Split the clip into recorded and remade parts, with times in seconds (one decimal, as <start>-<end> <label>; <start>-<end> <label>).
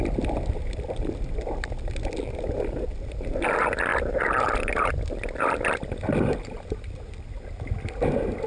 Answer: 0.0-8.5 recorded